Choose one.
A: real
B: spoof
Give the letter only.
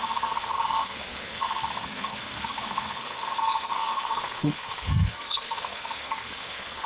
B